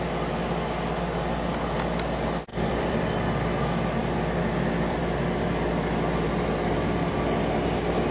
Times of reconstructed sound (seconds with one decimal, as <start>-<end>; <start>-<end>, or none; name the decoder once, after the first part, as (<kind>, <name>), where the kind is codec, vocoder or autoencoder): 2.5-3.1 (vocoder, BigVGAN v2); 4.0-5.0